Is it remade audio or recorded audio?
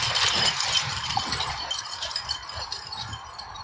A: remade